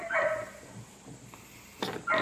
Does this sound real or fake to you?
real